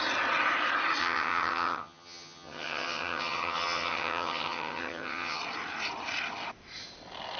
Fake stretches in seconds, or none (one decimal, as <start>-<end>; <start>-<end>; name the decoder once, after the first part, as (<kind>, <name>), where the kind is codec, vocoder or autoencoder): 1.0-5.4 (vocoder, HiFi-GAN)